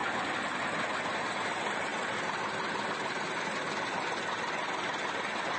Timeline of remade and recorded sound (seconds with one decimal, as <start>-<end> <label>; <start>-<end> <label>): 0.0-5.6 recorded